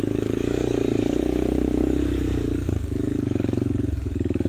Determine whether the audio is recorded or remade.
remade